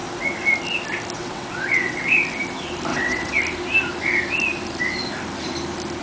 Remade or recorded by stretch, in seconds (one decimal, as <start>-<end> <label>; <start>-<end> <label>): 0.0-1.2 recorded; 1.2-2.1 remade; 2.1-2.9 recorded; 2.9-3.4 remade; 3.4-6.0 recorded